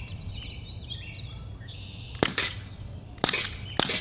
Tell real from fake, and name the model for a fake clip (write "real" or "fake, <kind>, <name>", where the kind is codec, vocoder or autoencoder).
real